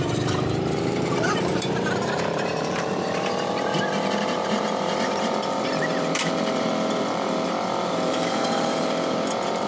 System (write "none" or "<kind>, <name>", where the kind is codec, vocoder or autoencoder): vocoder, BigVGAN v2